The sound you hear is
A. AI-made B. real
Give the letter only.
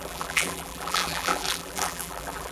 A